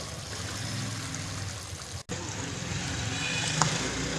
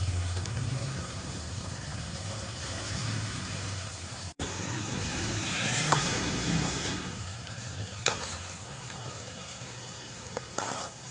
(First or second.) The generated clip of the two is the second